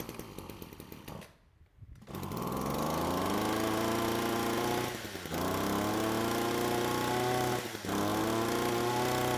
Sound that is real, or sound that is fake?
real